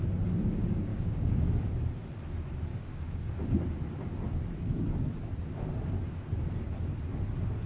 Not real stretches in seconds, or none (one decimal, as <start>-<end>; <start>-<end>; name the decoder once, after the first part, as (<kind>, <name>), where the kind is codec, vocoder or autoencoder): 0.9-1.5 (codec, DAC); 2.7-3.6